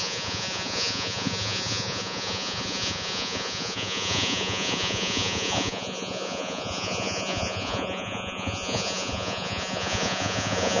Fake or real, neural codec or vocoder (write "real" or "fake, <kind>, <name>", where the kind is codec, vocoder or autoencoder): fake, vocoder, Vocos